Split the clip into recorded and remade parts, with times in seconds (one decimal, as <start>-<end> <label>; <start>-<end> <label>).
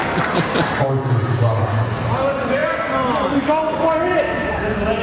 0.0-5.0 recorded